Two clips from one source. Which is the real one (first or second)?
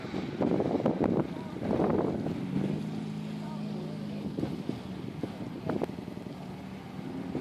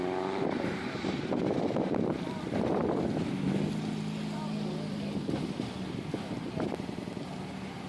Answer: first